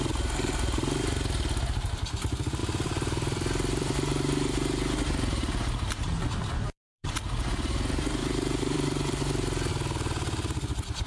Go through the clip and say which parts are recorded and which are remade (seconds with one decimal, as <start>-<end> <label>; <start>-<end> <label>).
0.0-2.6 recorded; 2.6-7.1 remade; 7.1-8.2 recorded; 8.2-9.7 remade; 9.7-11.1 recorded